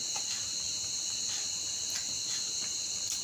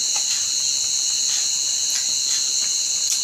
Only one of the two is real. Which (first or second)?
second